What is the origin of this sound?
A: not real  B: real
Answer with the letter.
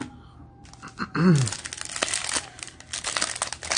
B